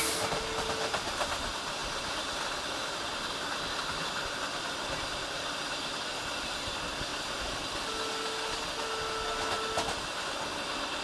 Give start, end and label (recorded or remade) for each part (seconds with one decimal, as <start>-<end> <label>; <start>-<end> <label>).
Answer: 0.0-7.1 recorded; 7.1-8.1 remade; 8.1-11.0 recorded